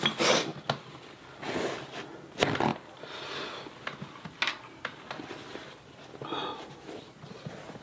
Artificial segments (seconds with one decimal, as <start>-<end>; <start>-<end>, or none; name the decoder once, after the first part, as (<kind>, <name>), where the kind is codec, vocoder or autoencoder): none